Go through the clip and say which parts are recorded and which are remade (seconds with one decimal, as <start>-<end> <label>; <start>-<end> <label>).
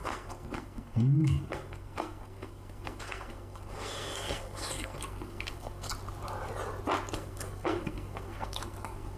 0.0-5.9 remade; 5.9-7.1 recorded; 7.1-9.2 remade